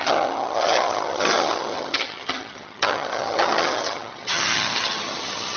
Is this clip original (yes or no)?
no